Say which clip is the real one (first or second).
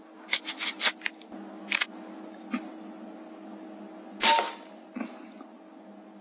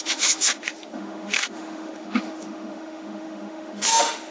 first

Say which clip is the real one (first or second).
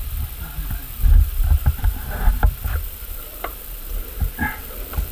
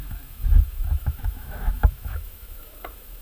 first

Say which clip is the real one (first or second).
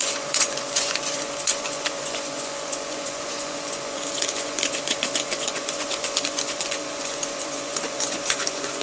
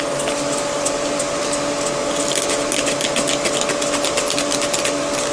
second